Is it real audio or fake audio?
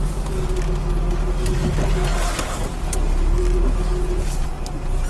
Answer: real